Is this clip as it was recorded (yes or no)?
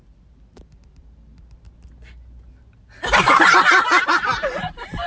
yes